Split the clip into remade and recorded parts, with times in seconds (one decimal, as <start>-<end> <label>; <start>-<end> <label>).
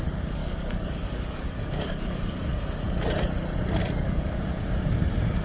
0.0-0.4 recorded; 0.4-2.5 remade; 2.5-3.8 recorded; 3.8-4.4 remade; 4.4-5.4 recorded